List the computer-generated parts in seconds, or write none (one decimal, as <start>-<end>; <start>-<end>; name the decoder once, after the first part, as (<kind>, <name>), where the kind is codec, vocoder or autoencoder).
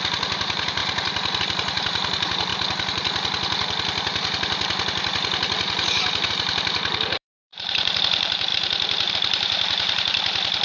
0.0-0.8 (vocoder, BigVGAN v2); 1.4-2.5; 6.3-10.6